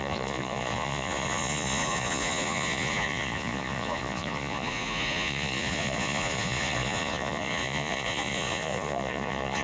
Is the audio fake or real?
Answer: fake